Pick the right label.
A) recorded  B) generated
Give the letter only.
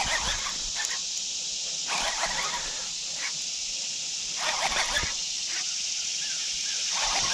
A